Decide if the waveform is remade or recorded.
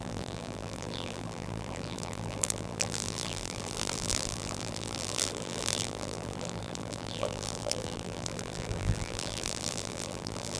remade